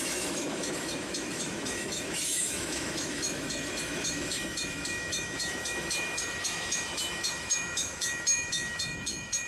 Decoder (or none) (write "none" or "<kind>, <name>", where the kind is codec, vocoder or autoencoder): autoencoder, DAC-VAE